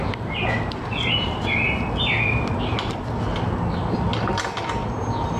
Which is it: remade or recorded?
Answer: recorded